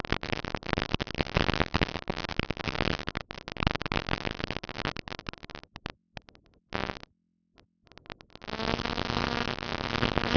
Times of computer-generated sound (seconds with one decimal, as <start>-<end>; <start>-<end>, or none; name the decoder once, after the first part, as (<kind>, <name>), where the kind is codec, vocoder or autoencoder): none